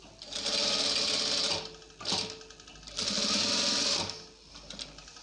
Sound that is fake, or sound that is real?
real